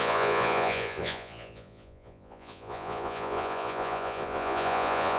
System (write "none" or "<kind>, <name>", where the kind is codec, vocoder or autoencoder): vocoder, Vocos